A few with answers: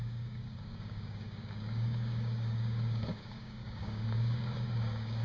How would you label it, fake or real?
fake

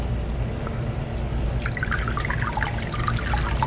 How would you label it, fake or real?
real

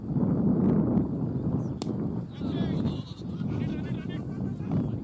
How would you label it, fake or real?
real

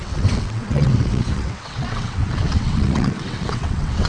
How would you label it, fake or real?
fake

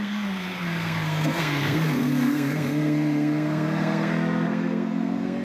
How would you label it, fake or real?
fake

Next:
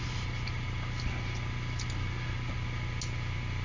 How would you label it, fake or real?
real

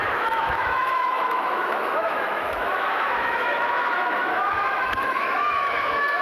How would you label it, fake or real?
fake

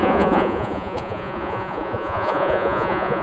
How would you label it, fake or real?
fake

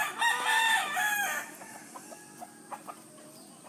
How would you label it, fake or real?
real